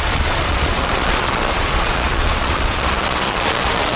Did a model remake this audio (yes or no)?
yes